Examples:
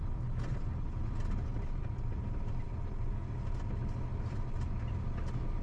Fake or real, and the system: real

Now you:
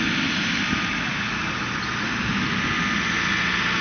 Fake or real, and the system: real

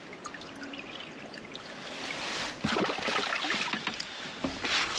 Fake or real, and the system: real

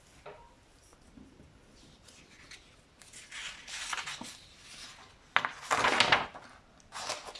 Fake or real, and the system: real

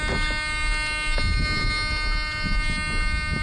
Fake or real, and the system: real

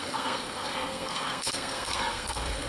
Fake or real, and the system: fake, codec, SNAC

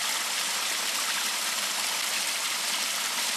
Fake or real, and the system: real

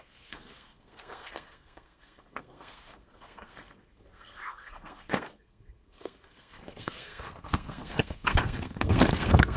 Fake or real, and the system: fake, codec, SNAC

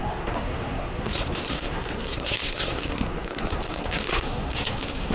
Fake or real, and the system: fake, codec, SNAC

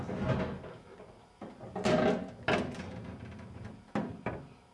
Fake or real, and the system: real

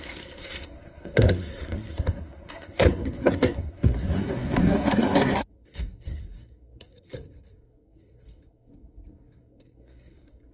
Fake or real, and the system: fake, codec, SNAC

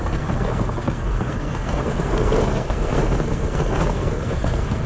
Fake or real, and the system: fake, codec, SNAC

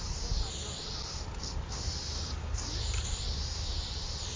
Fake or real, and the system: real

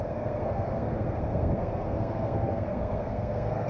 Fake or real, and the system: fake, codec, SNAC